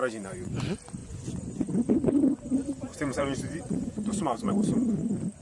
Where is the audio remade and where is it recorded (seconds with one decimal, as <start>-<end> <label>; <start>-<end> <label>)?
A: 0.0-0.6 remade; 0.6-1.0 recorded; 1.0-2.4 remade; 2.4-2.9 recorded; 2.9-4.5 remade; 4.5-5.4 recorded

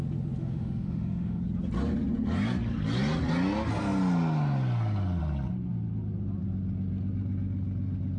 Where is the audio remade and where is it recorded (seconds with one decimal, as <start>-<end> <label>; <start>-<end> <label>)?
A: 0.0-0.4 recorded; 0.4-1.4 remade; 1.4-8.2 recorded

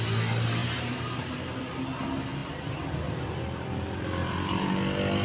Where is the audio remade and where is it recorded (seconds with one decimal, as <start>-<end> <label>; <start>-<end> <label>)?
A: 0.0-0.6 recorded; 0.6-1.6 remade; 1.6-4.2 recorded; 4.2-4.7 remade; 4.7-5.2 recorded

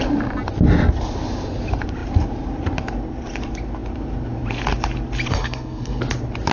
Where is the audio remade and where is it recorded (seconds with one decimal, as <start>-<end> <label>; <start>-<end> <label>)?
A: 0.0-5.3 recorded; 5.3-6.0 remade; 6.0-6.5 recorded

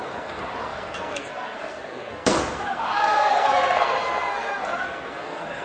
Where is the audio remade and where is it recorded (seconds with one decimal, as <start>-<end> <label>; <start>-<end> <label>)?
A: 0.0-5.6 remade

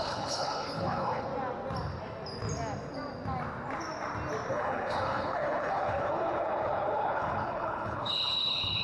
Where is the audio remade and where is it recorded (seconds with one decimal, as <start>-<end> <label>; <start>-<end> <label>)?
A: 0.0-1.3 remade; 1.3-4.5 recorded; 4.5-8.8 remade